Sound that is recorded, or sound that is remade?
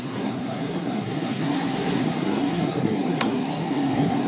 remade